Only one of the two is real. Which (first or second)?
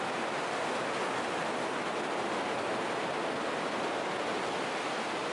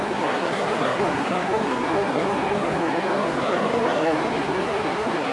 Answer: first